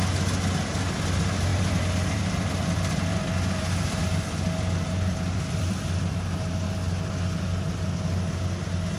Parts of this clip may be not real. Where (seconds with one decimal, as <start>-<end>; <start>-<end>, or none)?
1.5-6.5